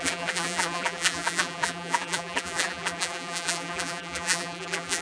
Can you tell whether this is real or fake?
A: fake